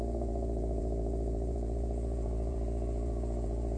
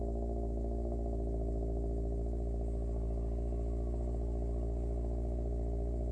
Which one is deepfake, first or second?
first